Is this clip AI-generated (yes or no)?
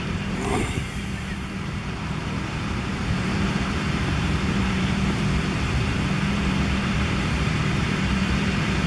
yes